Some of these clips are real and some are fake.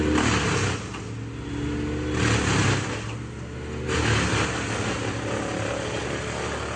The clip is real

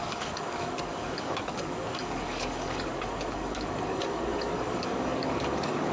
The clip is fake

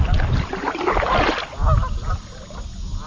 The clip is real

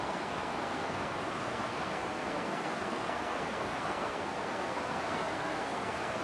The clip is fake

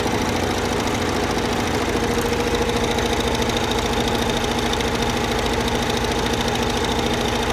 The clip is real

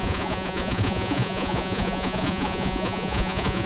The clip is fake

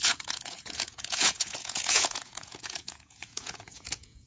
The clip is fake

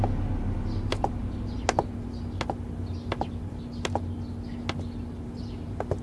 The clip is real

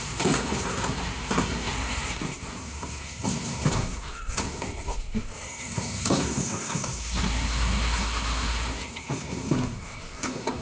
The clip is fake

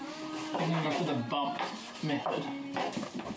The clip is real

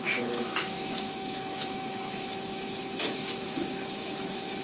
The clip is fake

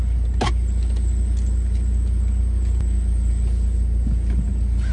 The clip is real